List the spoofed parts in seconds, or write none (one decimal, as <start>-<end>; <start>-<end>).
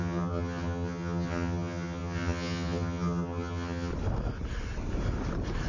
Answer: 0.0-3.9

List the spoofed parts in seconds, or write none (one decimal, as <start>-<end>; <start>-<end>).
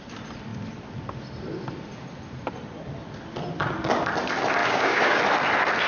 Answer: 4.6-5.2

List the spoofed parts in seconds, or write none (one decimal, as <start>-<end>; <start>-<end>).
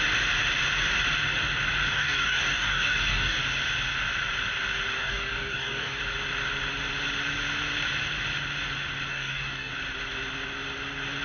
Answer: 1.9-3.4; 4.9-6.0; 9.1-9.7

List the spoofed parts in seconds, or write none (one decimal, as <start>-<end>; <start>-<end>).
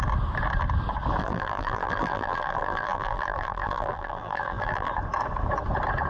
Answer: 1.2-4.9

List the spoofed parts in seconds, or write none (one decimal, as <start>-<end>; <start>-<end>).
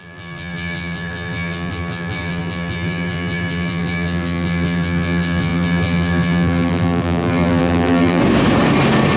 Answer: 0.0-8.2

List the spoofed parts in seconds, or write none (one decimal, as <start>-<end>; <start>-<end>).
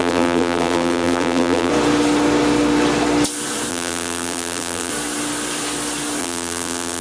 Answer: 0.0-1.7; 3.7-4.9; 6.2-7.0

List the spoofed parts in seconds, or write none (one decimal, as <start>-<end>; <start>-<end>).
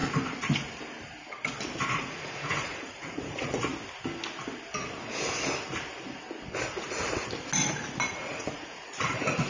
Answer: 1.9-3.7; 8.1-9.5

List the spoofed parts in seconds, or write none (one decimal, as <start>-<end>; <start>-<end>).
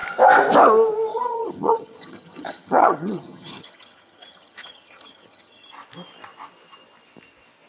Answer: 1.1-5.7